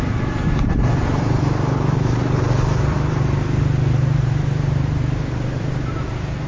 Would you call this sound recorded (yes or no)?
no